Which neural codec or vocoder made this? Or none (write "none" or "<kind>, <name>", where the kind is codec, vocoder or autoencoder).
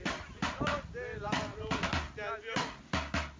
none